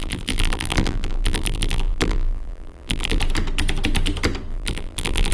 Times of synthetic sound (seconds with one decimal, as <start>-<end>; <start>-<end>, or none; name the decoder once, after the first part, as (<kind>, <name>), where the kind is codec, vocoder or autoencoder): 0.0-3.2 (vocoder, BigVGAN v2); 4.5-5.3